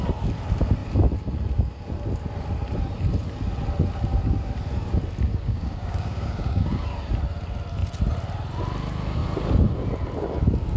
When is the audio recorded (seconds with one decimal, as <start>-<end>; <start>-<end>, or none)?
0.0-5.3; 6.8-10.8